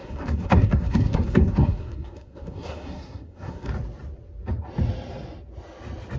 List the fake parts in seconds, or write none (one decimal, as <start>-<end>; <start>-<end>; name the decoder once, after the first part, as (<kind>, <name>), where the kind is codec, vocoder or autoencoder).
0.0-3.7 (codec, SNAC)